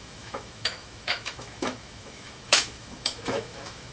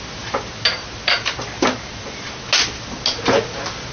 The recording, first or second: second